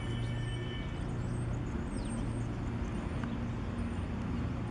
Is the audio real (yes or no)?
yes